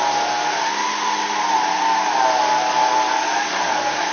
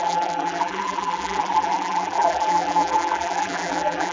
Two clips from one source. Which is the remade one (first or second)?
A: second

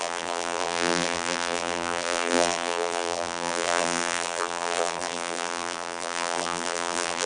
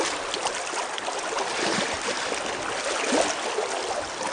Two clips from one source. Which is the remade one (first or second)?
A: first